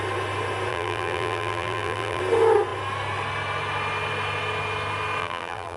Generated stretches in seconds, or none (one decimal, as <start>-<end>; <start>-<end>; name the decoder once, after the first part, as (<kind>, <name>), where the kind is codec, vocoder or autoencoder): 0.7-2.2 (vocoder, BigVGAN v2); 5.2-5.8

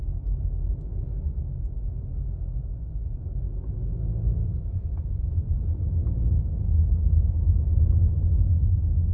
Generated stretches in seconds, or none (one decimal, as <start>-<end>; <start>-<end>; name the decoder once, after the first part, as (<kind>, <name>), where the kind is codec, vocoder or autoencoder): 4.4-5.3 (vocoder, Vocos)

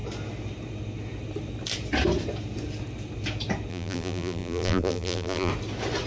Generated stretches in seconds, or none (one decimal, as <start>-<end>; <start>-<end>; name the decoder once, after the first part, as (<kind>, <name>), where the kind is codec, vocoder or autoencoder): 3.7-5.5 (vocoder, BigVGAN v2)

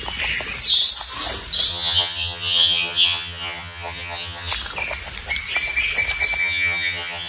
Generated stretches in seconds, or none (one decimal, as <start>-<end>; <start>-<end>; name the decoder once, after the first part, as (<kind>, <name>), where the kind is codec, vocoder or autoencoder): 1.7-4.5 (vocoder, HiFi-GAN); 6.4-7.3

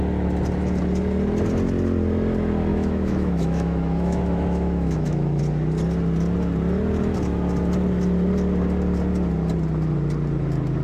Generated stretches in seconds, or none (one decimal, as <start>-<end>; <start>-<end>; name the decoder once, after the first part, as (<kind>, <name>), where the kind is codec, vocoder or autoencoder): 2.7-5.4 (autoencoder, DAC-VAE)

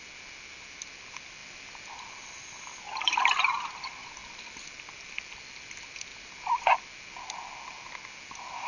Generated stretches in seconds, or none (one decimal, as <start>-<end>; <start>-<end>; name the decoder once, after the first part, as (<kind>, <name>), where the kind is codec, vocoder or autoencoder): none